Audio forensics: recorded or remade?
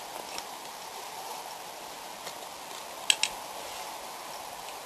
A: recorded